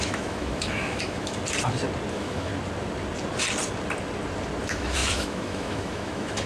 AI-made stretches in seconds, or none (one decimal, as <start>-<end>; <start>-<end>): 0.0-1.4; 2.1-2.5; 4.6-6.5